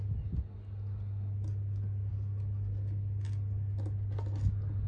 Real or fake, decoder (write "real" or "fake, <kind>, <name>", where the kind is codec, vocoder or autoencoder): real